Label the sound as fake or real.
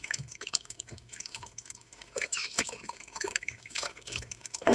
fake